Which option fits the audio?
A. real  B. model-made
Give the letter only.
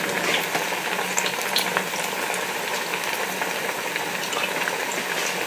A